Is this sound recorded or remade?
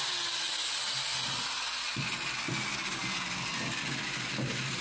recorded